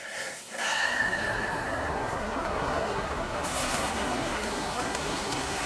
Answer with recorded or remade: remade